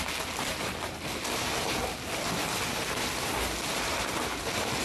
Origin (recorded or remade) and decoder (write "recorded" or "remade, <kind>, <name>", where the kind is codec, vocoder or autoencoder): recorded